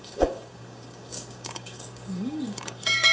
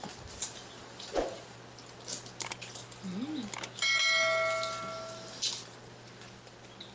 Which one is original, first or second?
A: second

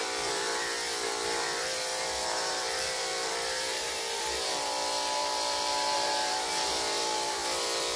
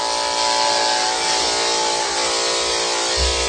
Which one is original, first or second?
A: second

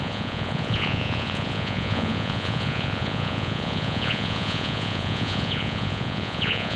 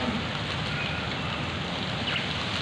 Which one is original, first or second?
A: second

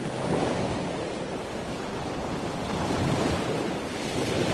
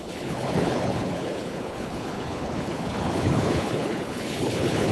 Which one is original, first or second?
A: first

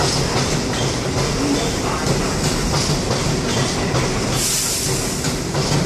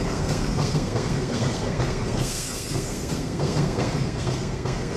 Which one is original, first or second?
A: first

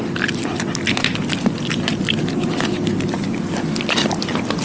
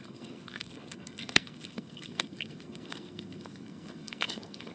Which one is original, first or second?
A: first